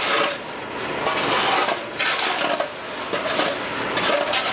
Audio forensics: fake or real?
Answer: real